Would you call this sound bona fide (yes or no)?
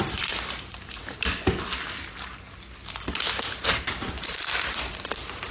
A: yes